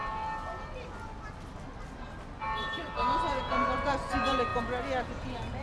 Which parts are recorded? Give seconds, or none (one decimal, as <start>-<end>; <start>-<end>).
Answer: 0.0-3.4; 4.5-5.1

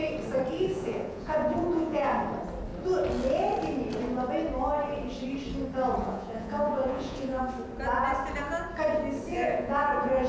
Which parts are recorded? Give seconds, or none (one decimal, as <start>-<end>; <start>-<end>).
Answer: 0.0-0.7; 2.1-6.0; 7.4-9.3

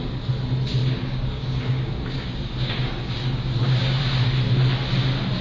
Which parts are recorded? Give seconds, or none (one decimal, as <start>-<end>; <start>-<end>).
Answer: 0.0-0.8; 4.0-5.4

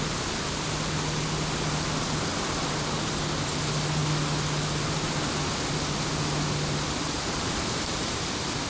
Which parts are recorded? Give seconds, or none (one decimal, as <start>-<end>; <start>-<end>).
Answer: 0.0-8.7

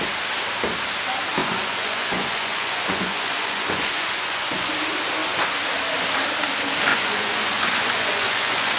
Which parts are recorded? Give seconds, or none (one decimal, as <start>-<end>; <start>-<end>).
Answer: 0.0-1.4; 4.7-6.9

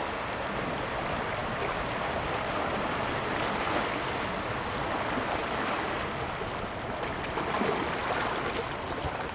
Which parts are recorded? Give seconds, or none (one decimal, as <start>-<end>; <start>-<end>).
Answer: 0.0-9.3